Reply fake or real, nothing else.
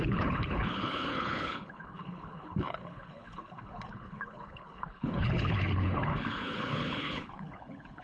fake